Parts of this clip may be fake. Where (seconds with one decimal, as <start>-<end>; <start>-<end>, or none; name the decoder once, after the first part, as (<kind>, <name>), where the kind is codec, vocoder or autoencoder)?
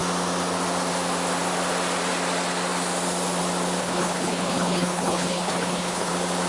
3.8-6.1 (codec, HILCodec)